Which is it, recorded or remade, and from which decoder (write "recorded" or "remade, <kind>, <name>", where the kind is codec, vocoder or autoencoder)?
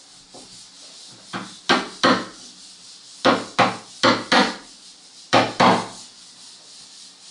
recorded